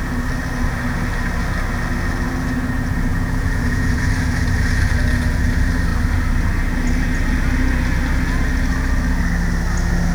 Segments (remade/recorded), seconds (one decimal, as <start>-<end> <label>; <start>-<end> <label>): 0.0-3.1 recorded; 3.1-4.0 remade; 4.0-10.1 recorded